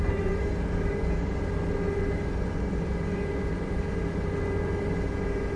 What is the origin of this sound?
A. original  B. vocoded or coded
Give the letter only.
A